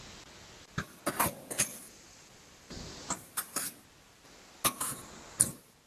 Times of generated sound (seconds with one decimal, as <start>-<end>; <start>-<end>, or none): 1.8-4.6